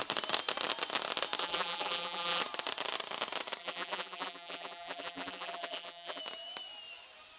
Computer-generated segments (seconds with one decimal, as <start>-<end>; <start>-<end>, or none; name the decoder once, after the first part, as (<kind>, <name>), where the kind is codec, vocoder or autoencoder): 1.4-2.4 (vocoder, BigVGAN v2); 3.6-6.2